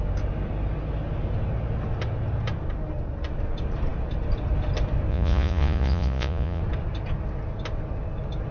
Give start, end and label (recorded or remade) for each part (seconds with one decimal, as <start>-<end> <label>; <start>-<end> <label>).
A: 0.0-5.1 recorded; 5.1-6.6 remade; 6.6-8.5 recorded